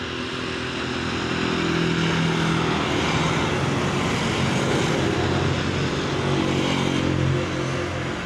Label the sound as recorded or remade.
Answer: recorded